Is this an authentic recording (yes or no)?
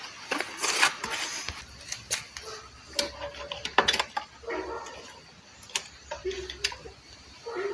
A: yes